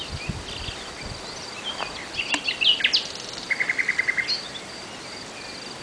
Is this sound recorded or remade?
recorded